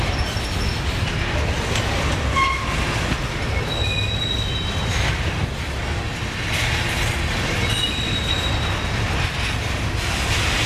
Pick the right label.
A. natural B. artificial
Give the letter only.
A